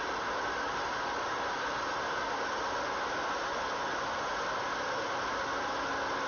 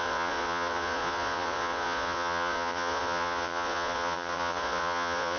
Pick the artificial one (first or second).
second